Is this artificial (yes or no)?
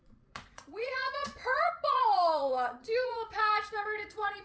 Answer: yes